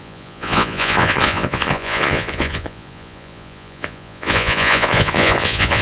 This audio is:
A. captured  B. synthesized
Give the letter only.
B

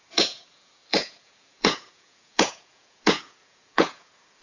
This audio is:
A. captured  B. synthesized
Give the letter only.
B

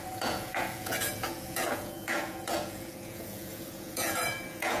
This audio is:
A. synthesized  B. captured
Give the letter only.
A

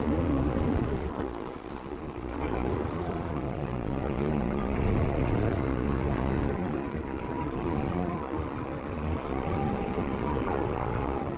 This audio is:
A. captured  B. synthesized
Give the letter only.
B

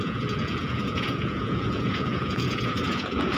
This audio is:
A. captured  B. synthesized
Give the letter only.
B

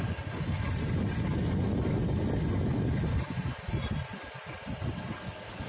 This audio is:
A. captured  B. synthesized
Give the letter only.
A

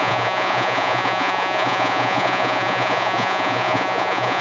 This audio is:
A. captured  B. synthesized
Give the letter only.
B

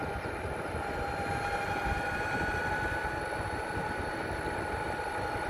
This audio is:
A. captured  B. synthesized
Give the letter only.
A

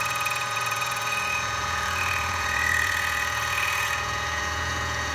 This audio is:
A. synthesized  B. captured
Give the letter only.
A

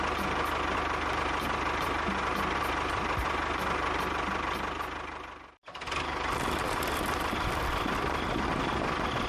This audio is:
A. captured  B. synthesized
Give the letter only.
A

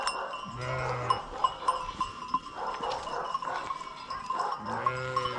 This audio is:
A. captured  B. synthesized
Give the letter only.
A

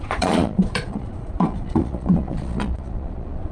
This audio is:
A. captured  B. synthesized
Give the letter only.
B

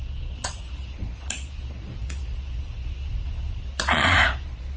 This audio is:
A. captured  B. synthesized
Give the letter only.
B